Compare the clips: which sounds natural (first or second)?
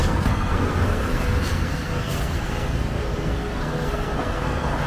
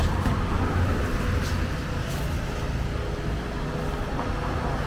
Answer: second